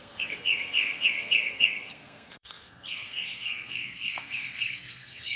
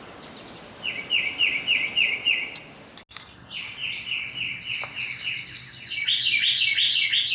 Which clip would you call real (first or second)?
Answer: second